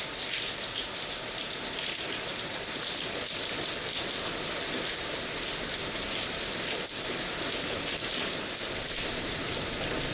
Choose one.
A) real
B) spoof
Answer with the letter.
A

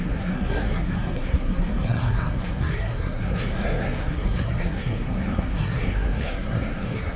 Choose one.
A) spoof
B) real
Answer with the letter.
A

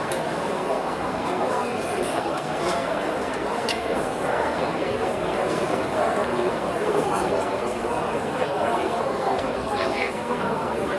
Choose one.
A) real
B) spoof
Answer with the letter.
B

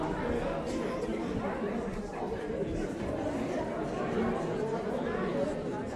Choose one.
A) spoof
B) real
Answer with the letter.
B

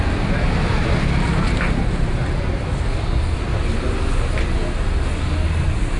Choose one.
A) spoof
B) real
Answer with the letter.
B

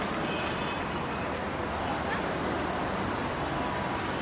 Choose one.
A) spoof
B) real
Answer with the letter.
B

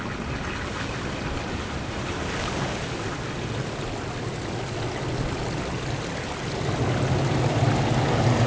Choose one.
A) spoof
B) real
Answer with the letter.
B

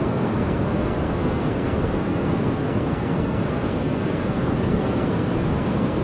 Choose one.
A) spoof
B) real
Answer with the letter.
A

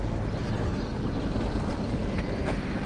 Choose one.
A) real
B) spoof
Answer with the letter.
A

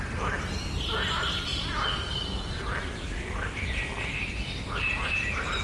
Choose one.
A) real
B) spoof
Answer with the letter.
A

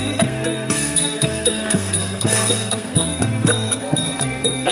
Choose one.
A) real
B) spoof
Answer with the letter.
B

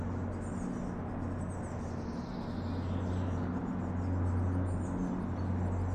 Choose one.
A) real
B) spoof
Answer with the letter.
A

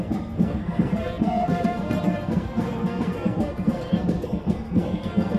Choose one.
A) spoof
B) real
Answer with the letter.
A